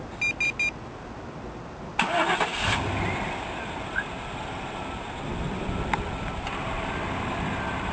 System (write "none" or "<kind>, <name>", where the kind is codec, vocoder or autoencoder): none